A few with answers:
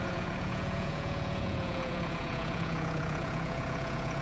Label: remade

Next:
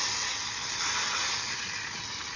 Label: recorded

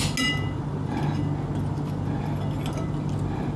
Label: recorded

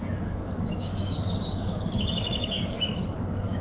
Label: remade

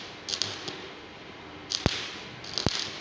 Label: recorded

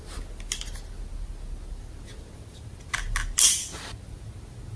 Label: recorded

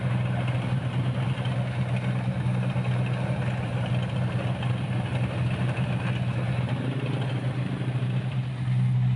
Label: recorded